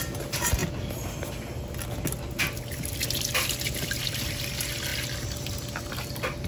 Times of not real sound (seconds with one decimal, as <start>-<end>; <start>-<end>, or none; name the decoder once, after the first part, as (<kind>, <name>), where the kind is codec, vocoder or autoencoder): none